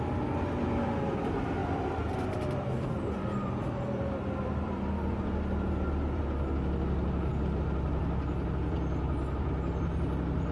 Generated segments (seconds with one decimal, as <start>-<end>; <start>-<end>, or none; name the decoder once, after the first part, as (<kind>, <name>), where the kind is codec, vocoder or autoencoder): 1.6-6.2 (vocoder, BigVGAN v2)